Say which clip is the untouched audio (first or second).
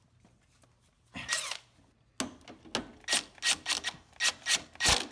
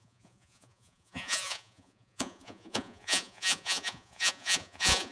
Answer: first